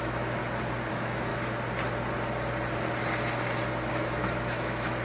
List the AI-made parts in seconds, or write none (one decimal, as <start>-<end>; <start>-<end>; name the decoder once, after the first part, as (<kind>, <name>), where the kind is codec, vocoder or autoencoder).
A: 0.0-0.4 (autoencoder, DAC-VAE); 0.9-1.3; 3.9-5.0